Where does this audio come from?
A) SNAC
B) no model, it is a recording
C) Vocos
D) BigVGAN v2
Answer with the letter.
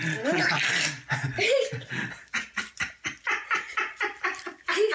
D